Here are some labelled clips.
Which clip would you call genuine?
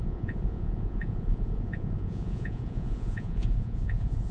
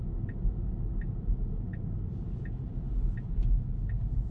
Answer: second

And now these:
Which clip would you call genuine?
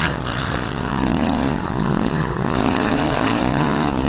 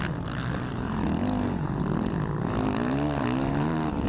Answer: second